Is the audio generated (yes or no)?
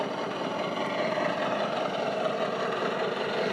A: yes